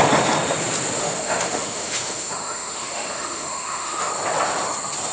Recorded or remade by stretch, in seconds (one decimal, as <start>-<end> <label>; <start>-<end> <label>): 0.0-1.0 recorded; 1.0-4.1 remade; 4.1-5.1 recorded

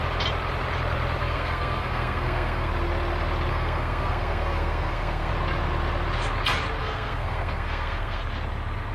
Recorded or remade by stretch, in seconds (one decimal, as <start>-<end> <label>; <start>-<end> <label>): 0.0-1.2 recorded; 1.2-2.7 remade; 2.7-3.5 recorded; 3.5-5.3 remade; 5.3-6.8 recorded; 6.8-8.2 remade; 8.2-8.9 recorded

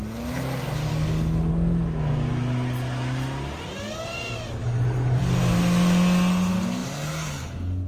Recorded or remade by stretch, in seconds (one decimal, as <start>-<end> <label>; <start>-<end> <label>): 0.0-0.9 recorded; 0.9-1.5 remade; 1.5-4.6 recorded; 4.6-5.2 remade; 5.2-7.9 recorded

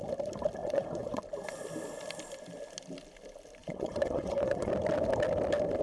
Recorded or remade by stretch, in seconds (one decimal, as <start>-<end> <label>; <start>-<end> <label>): 0.0-0.6 recorded; 0.6-1.2 remade; 1.2-3.6 recorded; 3.6-4.7 remade; 4.7-5.8 recorded